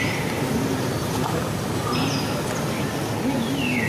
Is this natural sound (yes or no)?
yes